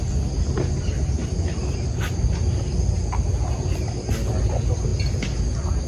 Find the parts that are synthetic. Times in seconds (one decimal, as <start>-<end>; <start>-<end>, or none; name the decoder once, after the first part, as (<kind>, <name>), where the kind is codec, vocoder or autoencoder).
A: none